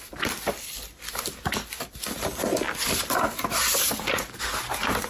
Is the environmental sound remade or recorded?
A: recorded